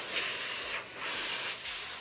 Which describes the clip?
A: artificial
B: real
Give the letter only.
B